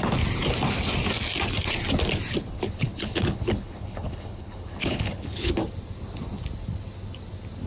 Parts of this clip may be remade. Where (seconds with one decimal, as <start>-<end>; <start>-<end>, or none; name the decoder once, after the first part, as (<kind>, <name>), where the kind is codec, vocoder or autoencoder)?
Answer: 2.5-5.5 (codec, HILCodec)